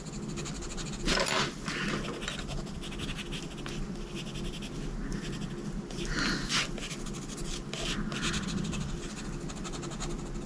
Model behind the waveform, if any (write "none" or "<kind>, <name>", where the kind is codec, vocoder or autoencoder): none